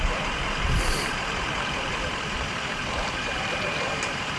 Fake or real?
fake